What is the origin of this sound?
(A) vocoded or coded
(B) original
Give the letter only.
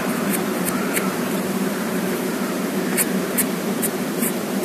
A